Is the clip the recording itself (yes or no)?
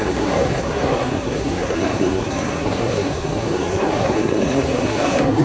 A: no